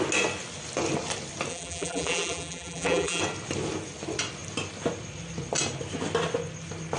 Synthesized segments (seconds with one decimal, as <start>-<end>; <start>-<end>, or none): 1.5-3.2